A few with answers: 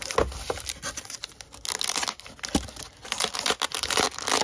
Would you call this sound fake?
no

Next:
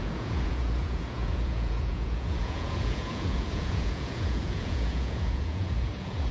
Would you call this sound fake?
yes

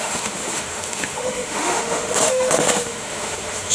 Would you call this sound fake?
yes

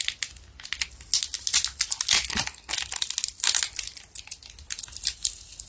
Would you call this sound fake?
no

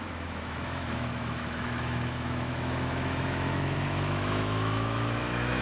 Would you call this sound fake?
yes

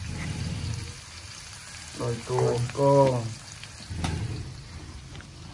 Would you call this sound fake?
no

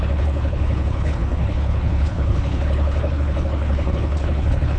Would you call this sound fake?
yes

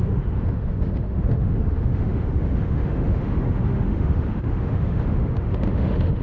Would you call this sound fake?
yes